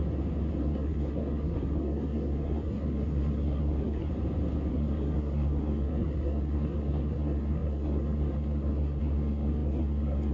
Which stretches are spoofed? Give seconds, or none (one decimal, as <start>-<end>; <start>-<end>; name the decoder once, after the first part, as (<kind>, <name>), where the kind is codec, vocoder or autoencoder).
0.6-4.1 (codec, SNAC); 4.7-10.3

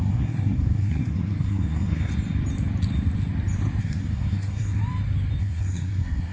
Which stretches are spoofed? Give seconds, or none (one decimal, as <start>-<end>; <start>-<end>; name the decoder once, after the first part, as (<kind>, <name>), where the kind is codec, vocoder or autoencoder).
0.0-2.1 (codec, SNAC); 3.8-4.8; 5.4-6.3

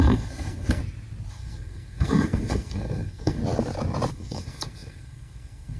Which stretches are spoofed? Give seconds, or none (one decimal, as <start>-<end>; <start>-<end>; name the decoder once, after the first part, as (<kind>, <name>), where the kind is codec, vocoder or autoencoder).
0.0-0.8 (codec, SNAC); 1.3-3.4; 4.1-5.8

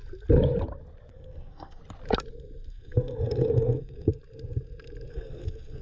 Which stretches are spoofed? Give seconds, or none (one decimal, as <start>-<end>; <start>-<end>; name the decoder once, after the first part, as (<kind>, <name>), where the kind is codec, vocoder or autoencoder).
1.1-1.8 (codec, SNAC); 2.7-4.1; 5.1-5.8

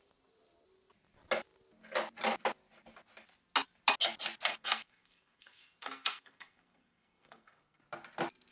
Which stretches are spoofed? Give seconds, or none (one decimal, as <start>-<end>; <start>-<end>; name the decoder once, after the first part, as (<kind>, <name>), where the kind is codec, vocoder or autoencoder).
4.5-7.8 (codec, SNAC)

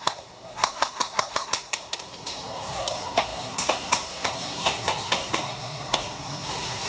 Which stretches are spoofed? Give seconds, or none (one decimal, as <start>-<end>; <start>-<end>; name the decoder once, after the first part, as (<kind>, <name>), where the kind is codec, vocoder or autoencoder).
0.0-6.9 (codec, SNAC)